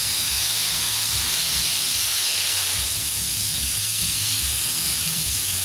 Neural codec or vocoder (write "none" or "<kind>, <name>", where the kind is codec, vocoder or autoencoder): codec, SNAC